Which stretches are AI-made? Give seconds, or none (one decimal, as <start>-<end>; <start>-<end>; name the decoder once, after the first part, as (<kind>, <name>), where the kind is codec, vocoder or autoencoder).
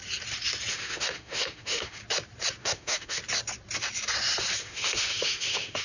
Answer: 0.7-2.0 (autoencoder, DAC-VAE); 2.6-3.2; 4.6-5.8